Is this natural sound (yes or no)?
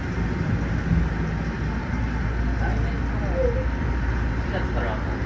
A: yes